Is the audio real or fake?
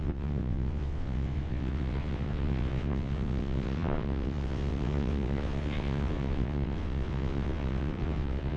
fake